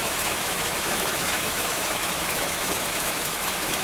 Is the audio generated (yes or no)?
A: yes